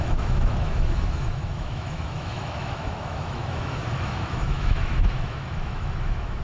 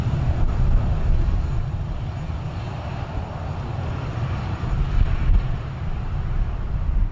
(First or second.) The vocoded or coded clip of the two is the first